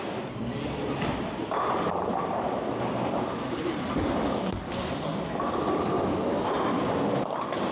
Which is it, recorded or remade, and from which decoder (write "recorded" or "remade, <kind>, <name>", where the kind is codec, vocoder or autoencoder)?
recorded